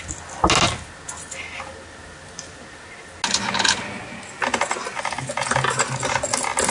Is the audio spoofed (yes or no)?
no